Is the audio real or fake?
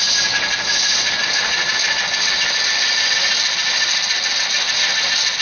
real